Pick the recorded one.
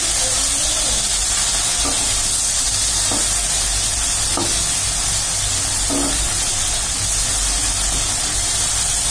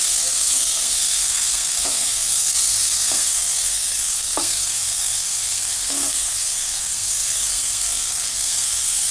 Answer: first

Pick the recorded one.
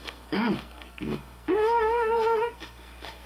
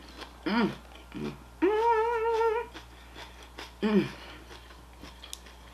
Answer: second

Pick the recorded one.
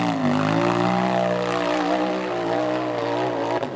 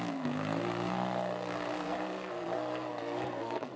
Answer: first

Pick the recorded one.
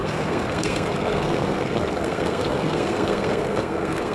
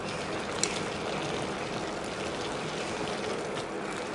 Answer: second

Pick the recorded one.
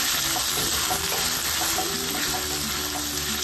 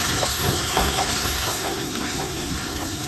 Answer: first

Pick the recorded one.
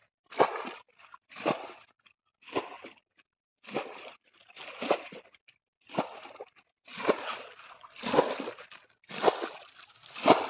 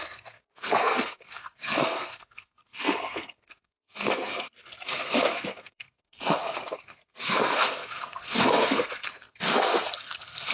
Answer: first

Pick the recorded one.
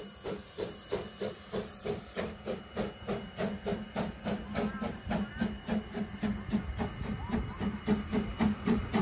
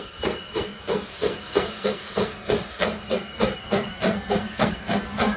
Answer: first